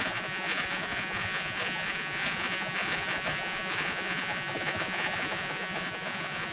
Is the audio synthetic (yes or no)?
yes